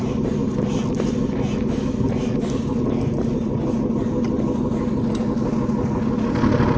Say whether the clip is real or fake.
real